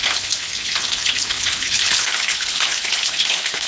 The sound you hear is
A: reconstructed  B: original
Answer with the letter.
A